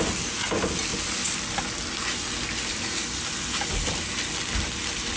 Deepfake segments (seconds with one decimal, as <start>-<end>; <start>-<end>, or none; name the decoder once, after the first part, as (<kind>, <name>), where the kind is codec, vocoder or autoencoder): none